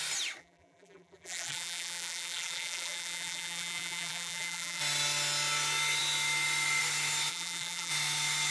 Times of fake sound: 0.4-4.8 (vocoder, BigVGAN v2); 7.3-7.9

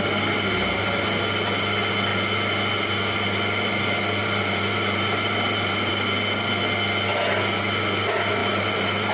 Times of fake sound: 4.2-5.9 (vocoder, BigVGAN v2); 8.4-9.1

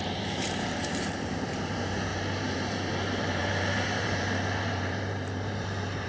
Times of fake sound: 0.0-6.1 (vocoder, BigVGAN v2)

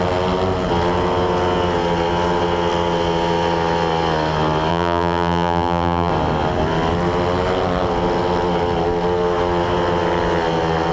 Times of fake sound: 4.7-6.1 (vocoder, BigVGAN v2)

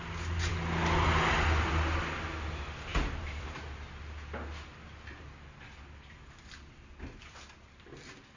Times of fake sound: 2.9-4.0 (vocoder, BigVGAN v2)